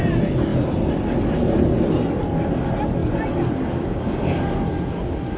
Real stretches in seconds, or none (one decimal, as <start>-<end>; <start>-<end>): 0.0-5.4

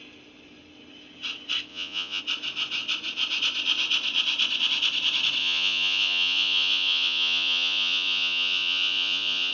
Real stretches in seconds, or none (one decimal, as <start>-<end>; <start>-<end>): 0.0-1.7; 2.2-5.4

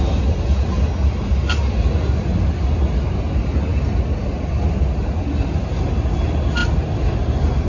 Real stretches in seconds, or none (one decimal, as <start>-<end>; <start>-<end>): 0.0-7.7

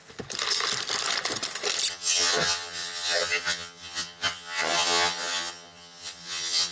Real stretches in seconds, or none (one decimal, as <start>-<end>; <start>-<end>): 0.0-1.9

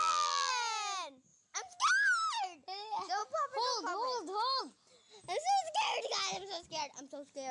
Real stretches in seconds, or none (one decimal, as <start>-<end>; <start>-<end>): 0.5-7.5